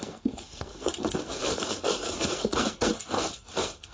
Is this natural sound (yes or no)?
no